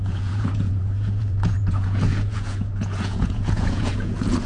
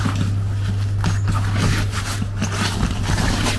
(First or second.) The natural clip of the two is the second